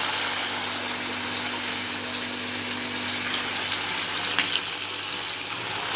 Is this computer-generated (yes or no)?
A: no